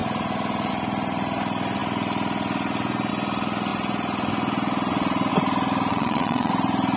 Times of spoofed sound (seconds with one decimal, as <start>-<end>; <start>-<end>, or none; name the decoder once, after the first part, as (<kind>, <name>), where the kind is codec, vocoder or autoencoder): 5.9-6.5 (vocoder, Vocos)